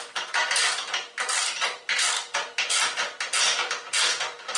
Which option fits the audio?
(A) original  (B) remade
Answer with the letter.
A